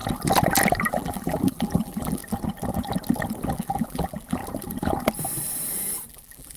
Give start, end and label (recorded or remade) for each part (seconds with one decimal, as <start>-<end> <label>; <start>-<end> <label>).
0.0-0.9 recorded; 0.9-2.2 remade; 2.2-3.5 recorded; 3.5-4.4 remade; 4.4-6.1 recorded; 6.1-6.6 remade